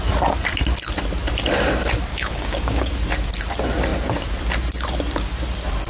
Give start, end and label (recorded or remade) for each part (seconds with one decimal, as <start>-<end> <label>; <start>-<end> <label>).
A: 0.0-2.1 recorded; 2.1-2.9 remade; 2.9-5.9 recorded